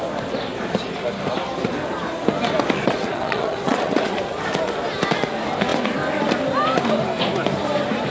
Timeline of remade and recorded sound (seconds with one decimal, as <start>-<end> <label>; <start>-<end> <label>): 0.0-2.8 recorded; 2.8-4.2 remade; 4.2-8.1 recorded